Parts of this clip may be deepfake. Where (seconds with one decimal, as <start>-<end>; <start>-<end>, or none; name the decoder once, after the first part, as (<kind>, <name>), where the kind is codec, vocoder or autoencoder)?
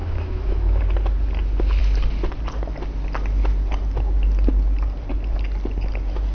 0.0-0.8 (autoencoder, DAC-VAE)